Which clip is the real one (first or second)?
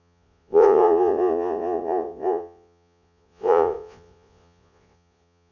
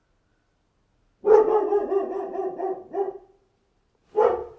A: second